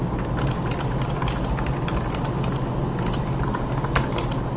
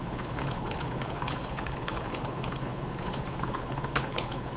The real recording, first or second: first